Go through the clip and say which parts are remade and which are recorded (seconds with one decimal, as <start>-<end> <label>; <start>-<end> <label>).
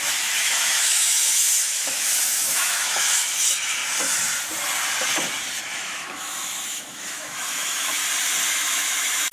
0.0-3.8 remade; 3.8-5.6 recorded; 5.6-8.0 remade; 8.0-8.5 recorded; 8.5-9.3 remade